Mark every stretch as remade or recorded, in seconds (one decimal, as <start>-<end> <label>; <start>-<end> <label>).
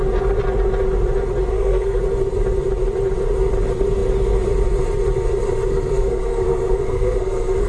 0.0-1.5 recorded; 1.5-2.0 remade; 2.0-5.7 recorded; 5.7-7.7 remade